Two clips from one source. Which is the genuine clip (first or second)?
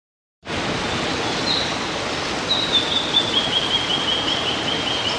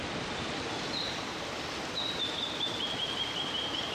first